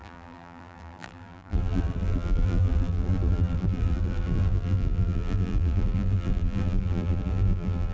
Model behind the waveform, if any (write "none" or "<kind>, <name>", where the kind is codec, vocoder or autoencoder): vocoder, BigVGAN v2